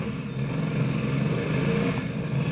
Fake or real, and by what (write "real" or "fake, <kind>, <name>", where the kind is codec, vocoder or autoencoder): real